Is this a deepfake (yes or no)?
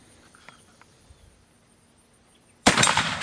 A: yes